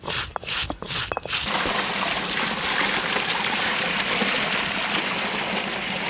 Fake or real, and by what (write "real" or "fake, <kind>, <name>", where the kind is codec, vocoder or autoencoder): real